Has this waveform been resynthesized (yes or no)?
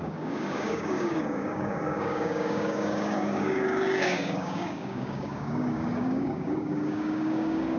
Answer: yes